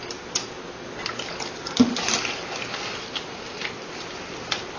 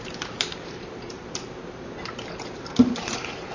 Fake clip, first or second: second